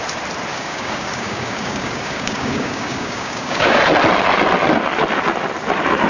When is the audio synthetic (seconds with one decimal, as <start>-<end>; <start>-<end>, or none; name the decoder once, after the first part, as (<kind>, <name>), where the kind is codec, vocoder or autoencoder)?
0.5-3.8 (codec, DAC)